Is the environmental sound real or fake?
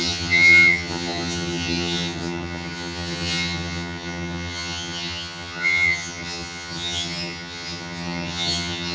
fake